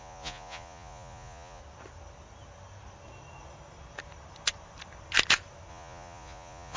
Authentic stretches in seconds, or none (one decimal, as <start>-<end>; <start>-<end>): 1.6-5.7